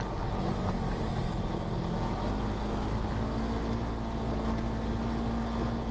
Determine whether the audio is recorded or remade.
recorded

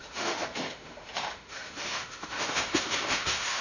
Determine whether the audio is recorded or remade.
remade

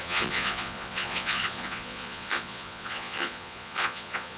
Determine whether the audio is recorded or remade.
remade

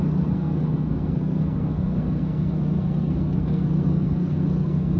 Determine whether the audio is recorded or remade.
remade